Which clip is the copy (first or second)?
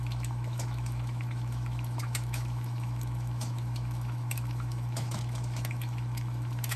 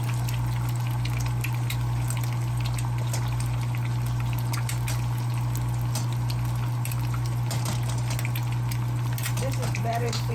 first